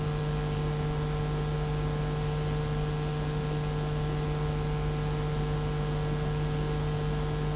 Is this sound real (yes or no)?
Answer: yes